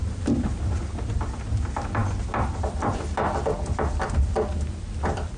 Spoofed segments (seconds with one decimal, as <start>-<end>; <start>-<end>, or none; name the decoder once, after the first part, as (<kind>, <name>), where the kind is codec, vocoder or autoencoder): none